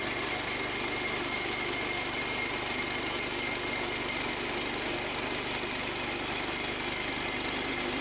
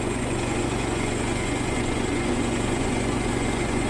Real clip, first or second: first